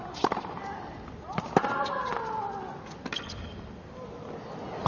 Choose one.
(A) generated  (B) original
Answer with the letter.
B